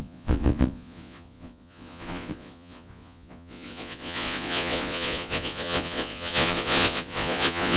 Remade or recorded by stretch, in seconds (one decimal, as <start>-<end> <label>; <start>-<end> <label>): 0.0-7.8 remade